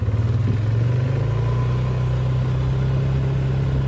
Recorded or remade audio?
recorded